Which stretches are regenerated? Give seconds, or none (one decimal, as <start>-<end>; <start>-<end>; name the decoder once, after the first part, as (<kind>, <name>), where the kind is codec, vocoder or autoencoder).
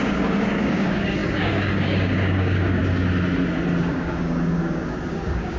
0.0-2.8 (codec, DAC); 3.9-5.6